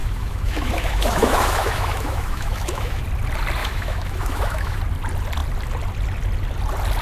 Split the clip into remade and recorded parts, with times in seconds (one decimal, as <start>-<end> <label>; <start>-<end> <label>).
0.0-3.0 remade; 3.0-3.6 recorded; 3.6-4.8 remade; 4.8-7.0 recorded